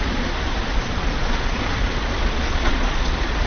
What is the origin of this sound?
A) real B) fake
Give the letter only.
B